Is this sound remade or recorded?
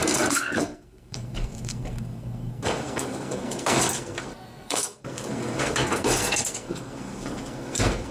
remade